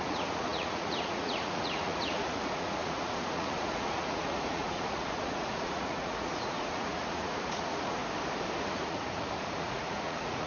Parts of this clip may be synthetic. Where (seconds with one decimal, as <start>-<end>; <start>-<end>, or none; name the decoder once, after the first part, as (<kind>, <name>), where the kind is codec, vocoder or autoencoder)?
0.0-8.0 (vocoder, Vocos); 8.6-10.5